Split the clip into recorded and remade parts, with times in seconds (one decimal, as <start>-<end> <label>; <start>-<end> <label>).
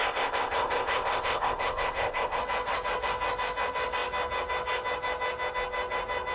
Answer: 0.0-2.4 remade; 2.4-6.3 recorded